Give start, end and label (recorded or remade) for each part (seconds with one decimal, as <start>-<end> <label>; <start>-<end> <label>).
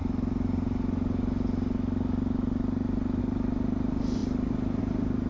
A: 0.0-5.3 recorded